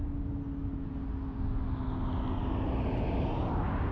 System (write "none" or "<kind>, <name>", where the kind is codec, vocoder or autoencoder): none